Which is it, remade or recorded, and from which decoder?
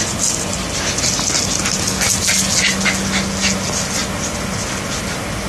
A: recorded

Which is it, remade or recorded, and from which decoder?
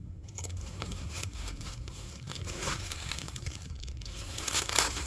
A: remade, codec, SNAC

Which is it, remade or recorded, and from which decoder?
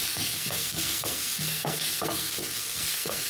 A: remade, codec, SNAC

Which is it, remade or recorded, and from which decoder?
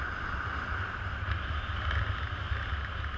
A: recorded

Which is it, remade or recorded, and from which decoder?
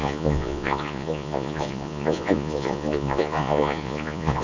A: remade, vocoder, Vocos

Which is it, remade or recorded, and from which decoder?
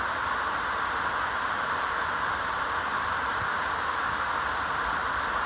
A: recorded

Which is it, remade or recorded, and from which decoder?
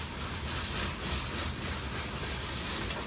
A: recorded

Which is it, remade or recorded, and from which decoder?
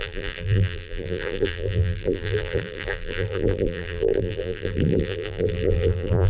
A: remade, vocoder, BigVGAN v2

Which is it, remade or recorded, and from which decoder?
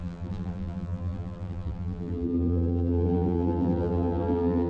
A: remade, vocoder, BigVGAN v2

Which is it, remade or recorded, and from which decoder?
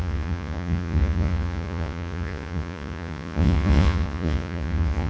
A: remade, vocoder, Vocos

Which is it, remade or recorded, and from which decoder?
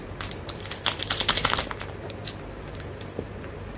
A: remade, vocoder, BigVGAN v2